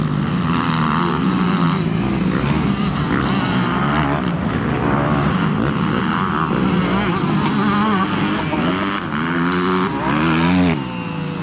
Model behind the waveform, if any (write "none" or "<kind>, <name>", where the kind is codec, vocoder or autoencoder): none